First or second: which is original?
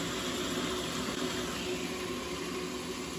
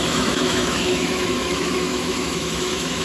first